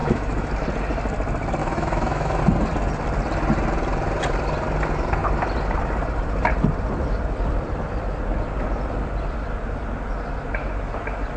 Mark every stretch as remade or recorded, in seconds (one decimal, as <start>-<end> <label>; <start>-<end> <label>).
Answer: 0.0-0.5 remade; 0.5-1.6 recorded; 1.6-2.4 remade; 2.4-11.4 recorded